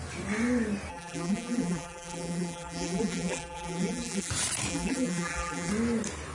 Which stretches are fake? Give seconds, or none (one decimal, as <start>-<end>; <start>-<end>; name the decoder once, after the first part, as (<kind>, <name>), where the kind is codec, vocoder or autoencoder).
0.9-4.3 (vocoder, BigVGAN v2); 4.7-5.7